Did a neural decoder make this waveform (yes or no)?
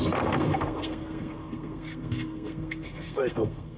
yes